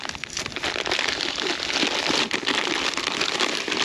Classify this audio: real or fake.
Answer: real